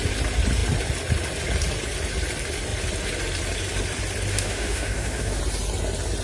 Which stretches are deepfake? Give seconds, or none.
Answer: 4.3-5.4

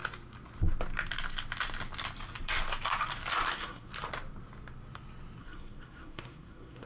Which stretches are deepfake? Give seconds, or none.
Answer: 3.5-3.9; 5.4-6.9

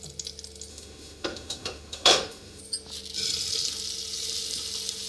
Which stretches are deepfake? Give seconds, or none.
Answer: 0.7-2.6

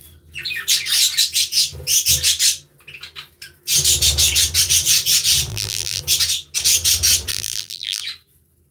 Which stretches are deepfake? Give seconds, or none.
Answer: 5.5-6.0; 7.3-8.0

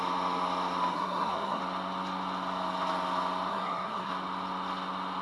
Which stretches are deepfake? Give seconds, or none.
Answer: 0.9-1.6; 3.5-4.1